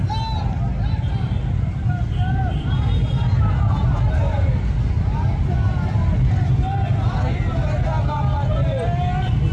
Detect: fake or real real